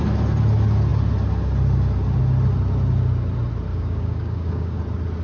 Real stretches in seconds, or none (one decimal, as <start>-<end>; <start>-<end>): 0.0-3.7; 4.8-5.2